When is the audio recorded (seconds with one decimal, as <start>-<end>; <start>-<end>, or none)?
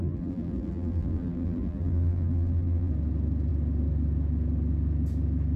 2.9-5.6